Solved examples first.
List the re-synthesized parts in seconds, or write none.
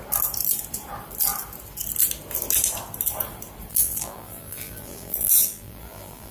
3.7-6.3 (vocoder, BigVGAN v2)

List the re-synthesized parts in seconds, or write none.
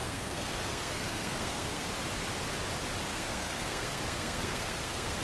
0.0-1.9 (codec, SNAC); 3.1-5.2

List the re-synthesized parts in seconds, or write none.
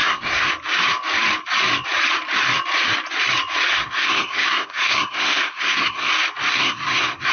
0.0-0.5 (codec, SNAC); 3.7-6.1; 6.5-7.3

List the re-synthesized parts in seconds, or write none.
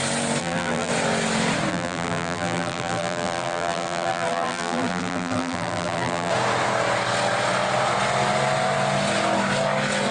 0.4-0.9 (vocoder, BigVGAN v2); 1.7-6.3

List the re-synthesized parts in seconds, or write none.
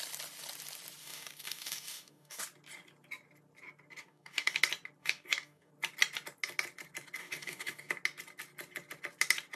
1.0-2.4 (codec, DAC); 4.0-4.6; 5.0-5.7; 7.2-7.9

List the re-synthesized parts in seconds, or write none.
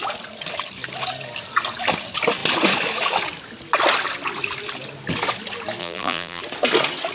5.8-6.4 (vocoder, BigVGAN v2)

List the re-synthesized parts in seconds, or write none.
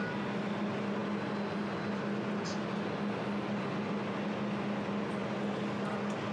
none